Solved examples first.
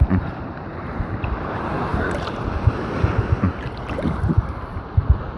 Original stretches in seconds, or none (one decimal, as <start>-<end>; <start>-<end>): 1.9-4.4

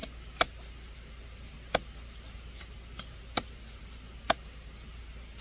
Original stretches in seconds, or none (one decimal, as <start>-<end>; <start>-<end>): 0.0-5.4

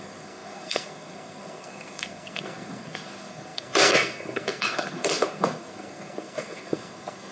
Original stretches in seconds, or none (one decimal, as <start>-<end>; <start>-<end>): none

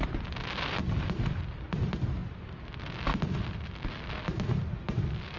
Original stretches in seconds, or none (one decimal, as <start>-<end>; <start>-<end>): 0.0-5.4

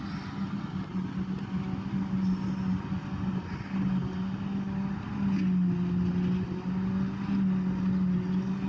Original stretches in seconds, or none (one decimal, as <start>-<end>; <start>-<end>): 0.0-8.7